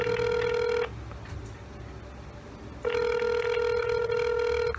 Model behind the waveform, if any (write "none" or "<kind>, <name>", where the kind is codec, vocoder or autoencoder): none